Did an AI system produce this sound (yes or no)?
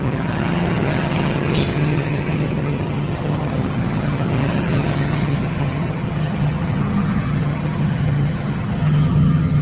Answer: yes